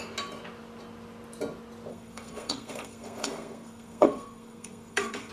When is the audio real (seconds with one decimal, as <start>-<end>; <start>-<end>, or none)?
0.0-1.9